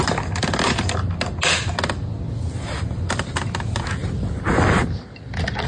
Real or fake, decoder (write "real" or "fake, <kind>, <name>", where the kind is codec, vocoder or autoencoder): real